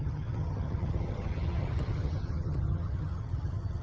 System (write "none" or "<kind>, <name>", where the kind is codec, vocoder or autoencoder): vocoder, HiFi-GAN